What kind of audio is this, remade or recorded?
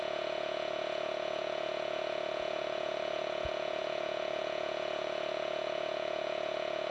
remade